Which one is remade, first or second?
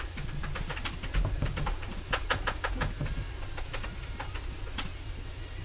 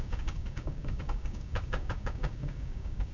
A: second